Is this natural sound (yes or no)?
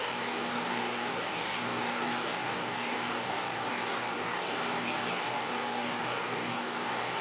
no